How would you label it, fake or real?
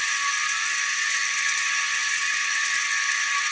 real